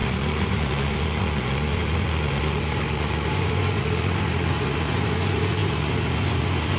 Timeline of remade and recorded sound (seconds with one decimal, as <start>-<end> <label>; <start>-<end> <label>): 0.0-6.8 remade